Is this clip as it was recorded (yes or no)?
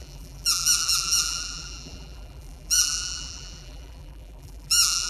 no